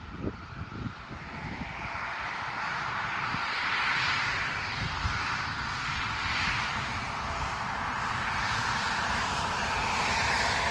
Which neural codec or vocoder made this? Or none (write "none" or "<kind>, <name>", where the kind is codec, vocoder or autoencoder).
vocoder, BigVGAN v2